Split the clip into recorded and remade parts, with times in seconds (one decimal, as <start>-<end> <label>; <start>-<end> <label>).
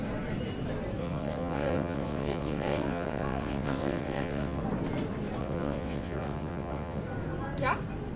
0.0-1.0 recorded; 1.0-4.6 remade; 4.6-5.4 recorded; 5.4-7.0 remade; 7.0-8.2 recorded